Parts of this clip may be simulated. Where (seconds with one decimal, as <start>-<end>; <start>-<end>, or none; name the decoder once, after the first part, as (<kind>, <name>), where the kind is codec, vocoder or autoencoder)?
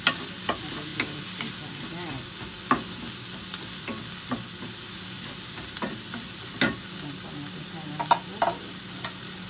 none